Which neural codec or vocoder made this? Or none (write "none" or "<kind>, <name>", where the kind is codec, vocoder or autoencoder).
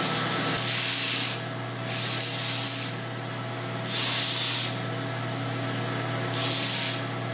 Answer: none